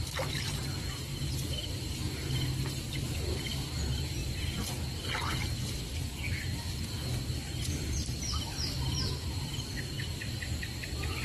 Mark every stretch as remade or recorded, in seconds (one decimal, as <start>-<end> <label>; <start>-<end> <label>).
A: 0.0-4.2 remade; 4.2-9.3 recorded; 9.3-11.2 remade